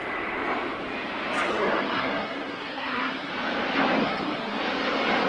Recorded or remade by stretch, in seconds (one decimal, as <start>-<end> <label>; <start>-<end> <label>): 0.0-1.5 recorded; 1.5-3.3 remade; 3.3-4.0 recorded; 4.0-4.6 remade; 4.6-5.3 recorded